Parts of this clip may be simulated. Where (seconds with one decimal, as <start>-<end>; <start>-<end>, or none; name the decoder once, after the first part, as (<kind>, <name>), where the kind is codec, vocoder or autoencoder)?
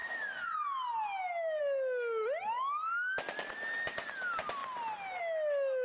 none